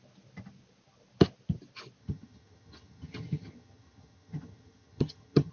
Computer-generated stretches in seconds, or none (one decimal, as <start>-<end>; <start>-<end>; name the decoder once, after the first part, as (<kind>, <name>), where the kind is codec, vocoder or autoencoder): 2.0-5.5 (vocoder, HiFi-GAN)